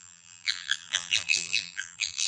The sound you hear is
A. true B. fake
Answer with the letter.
B